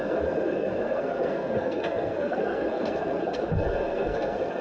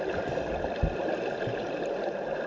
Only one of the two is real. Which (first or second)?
second